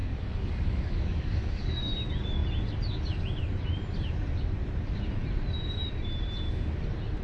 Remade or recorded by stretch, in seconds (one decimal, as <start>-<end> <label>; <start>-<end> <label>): 0.0-1.9 remade; 1.9-7.2 recorded